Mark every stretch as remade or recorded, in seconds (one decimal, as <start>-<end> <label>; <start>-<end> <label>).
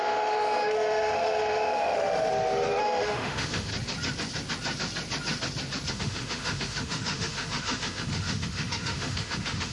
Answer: 0.0-2.3 remade; 2.3-2.8 recorded; 2.8-3.7 remade; 3.7-5.9 recorded; 5.9-9.7 remade